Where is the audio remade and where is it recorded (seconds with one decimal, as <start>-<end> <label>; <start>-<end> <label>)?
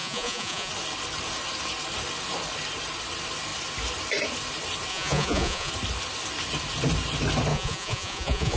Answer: 0.0-0.7 remade; 0.7-4.9 recorded; 4.9-5.7 remade; 5.7-7.5 recorded; 7.5-8.6 remade